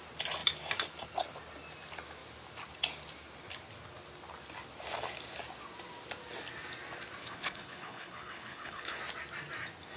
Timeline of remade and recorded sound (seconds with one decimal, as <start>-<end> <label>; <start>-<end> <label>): 0.0-7.2 recorded; 7.2-9.0 remade; 9.0-10.0 recorded